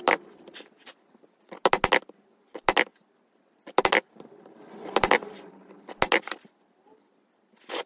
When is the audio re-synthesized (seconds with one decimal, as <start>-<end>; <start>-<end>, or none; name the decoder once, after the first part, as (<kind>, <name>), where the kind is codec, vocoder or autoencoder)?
none